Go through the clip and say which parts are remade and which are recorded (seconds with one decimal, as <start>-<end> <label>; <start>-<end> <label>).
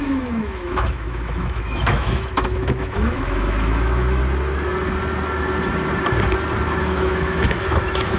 0.0-4.2 remade; 4.2-6.8 recorded; 6.8-8.2 remade